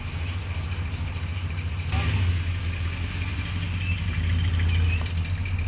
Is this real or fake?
real